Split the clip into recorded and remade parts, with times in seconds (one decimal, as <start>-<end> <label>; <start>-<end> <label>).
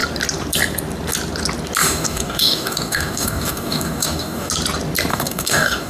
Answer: 0.0-1.8 recorded; 1.8-4.5 remade; 4.5-5.1 recorded; 5.1-5.9 remade